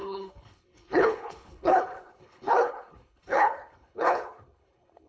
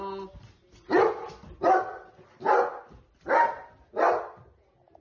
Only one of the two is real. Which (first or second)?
second